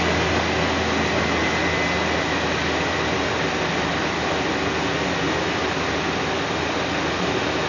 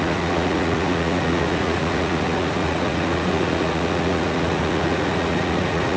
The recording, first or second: first